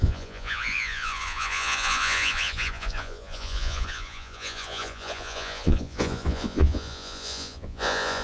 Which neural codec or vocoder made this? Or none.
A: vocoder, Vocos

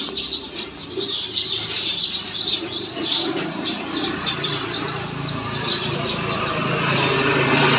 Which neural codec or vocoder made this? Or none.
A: vocoder, BigVGAN v2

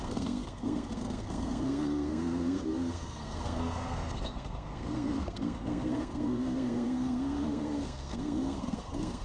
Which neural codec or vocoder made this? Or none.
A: codec, SNAC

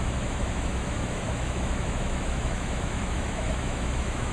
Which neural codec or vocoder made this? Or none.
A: autoencoder, DAC-VAE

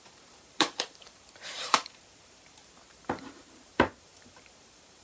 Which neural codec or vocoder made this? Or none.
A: vocoder, BigVGAN v2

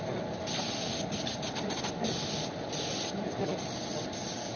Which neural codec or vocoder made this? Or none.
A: none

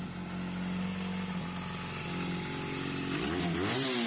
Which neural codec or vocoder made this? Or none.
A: none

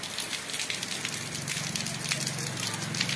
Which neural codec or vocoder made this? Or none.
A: none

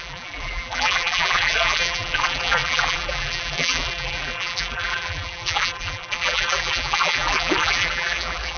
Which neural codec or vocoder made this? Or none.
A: vocoder, BigVGAN v2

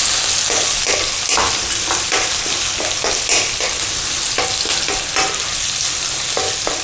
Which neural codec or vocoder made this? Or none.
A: none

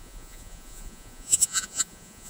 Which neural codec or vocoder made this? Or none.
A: vocoder, Vocos